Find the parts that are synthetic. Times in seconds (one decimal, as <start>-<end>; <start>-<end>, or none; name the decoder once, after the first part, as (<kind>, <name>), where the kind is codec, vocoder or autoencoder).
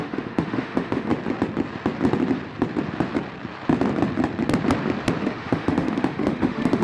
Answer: 0.0-1.1 (autoencoder, DAC-VAE); 5.2-6.8